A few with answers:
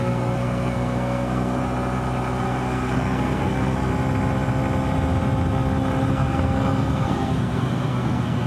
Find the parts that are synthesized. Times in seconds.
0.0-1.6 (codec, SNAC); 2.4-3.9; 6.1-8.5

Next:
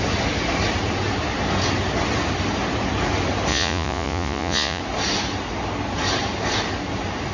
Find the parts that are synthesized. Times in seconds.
3.5-4.8 (vocoder, Vocos)

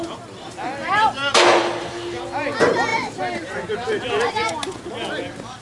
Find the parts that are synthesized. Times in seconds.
0.8-1.6 (vocoder, BigVGAN v2); 2.9-4.5

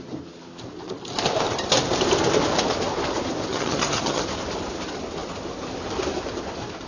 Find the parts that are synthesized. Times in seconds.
3.5-4.2 (vocoder, HiFi-GAN)

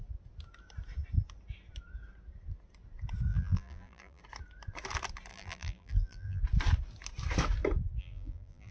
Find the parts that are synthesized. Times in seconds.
3.3-4.2 (vocoder, BigVGAN v2); 5.3-6.4; 8.0-8.7